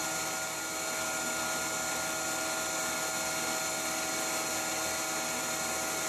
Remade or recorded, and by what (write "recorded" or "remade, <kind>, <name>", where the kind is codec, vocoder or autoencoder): recorded